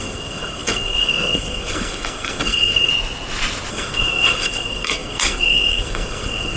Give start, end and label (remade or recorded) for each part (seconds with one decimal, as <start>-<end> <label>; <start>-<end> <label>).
0.0-2.9 remade; 2.9-3.7 recorded; 3.7-6.6 remade